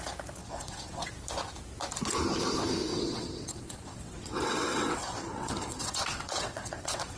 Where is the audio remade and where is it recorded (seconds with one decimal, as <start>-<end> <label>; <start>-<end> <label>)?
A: 0.0-0.4 recorded; 0.4-1.1 remade; 1.1-2.9 recorded; 2.9-7.2 remade